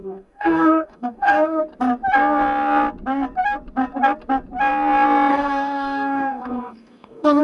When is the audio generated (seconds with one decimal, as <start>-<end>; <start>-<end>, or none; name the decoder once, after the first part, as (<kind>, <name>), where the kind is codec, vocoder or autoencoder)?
0.0-1.6 (codec, DAC); 5.3-7.4